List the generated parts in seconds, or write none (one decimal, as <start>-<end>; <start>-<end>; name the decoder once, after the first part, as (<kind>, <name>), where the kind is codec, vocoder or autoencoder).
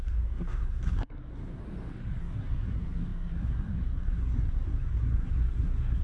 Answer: 0.0-1.6 (codec, SNAC); 2.2-6.0